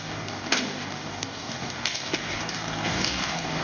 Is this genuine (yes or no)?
no